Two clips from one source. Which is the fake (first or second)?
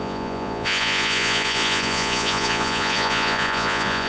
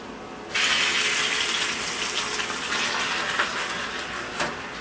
first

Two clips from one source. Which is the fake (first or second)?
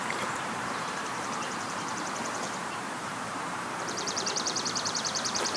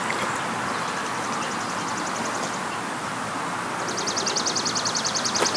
first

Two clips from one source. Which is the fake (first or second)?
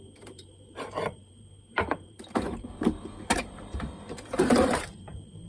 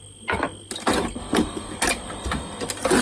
first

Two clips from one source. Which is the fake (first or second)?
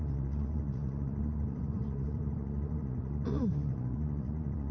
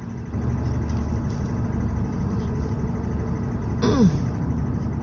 first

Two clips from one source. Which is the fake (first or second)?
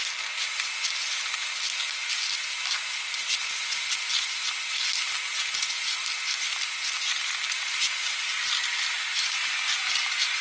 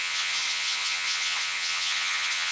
second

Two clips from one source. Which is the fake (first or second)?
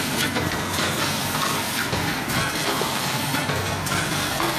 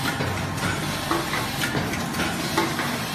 first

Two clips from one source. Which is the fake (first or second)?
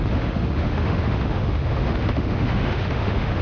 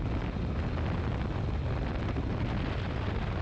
first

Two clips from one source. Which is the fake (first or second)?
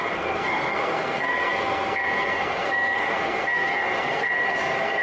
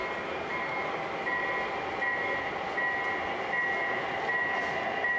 first